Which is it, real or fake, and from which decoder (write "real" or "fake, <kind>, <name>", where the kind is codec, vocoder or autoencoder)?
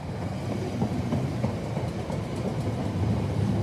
real